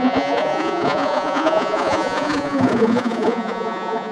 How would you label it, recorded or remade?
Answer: remade